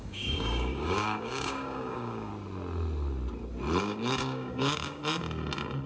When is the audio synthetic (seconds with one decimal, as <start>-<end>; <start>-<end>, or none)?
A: 0.0-2.3; 3.8-5.0